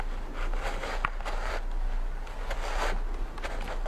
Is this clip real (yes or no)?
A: yes